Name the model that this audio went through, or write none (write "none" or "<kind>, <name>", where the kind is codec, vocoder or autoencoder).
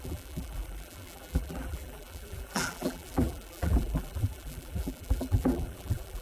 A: vocoder, BigVGAN v2